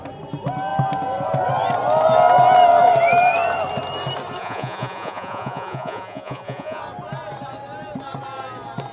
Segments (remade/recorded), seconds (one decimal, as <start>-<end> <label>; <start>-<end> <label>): 0.0-4.4 recorded; 4.4-6.8 remade; 6.8-8.9 recorded